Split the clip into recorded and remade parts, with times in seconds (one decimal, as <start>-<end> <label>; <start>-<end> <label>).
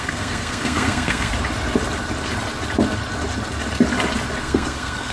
0.0-1.3 remade; 1.3-4.4 recorded; 4.4-5.1 remade